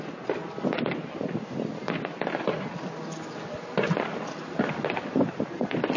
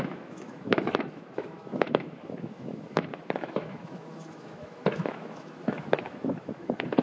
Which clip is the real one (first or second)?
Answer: first